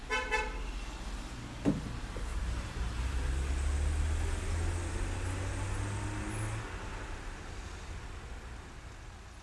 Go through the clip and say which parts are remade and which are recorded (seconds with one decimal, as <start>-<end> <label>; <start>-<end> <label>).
0.0-2.3 recorded; 2.3-3.0 remade; 3.0-6.9 recorded; 6.9-7.7 remade; 7.7-9.4 recorded